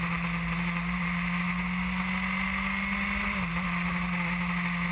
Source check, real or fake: real